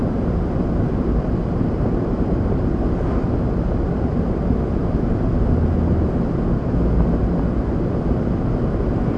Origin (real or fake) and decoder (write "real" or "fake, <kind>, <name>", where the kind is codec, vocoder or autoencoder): real